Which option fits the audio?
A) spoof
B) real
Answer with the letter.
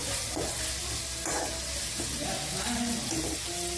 B